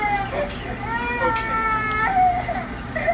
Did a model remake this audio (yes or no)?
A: no